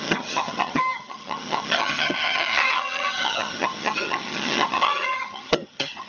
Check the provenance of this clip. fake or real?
fake